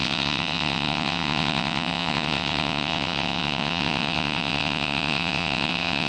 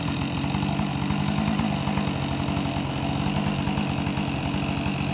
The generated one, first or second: first